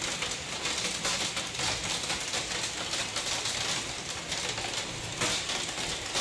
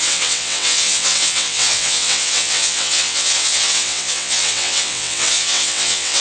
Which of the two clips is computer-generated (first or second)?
second